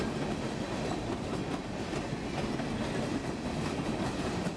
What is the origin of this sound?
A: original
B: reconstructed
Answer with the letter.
A